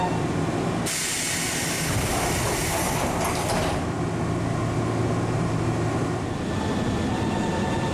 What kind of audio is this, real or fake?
real